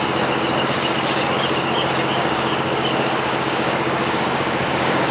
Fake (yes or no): yes